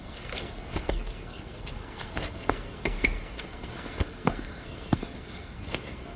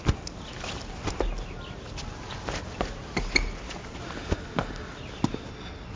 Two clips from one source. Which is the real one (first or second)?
second